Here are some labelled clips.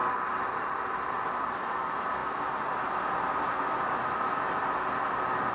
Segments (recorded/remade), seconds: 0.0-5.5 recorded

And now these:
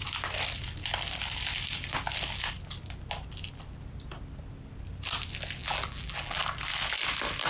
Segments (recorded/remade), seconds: 0.0-5.6 recorded; 5.6-6.4 remade; 6.4-7.5 recorded

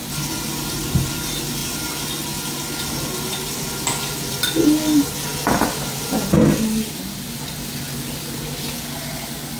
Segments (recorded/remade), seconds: 0.0-9.6 recorded

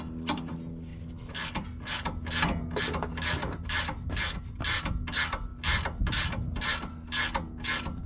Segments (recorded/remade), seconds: 0.0-3.4 recorded; 3.4-4.4 remade; 4.4-8.1 recorded